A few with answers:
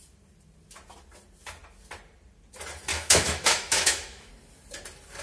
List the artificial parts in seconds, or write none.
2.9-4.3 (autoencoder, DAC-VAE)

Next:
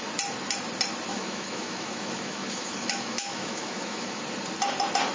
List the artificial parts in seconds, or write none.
1.1-4.2 (autoencoder, DAC-VAE)